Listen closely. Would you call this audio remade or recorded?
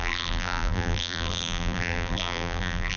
remade